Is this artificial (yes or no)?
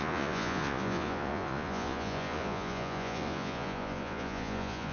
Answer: yes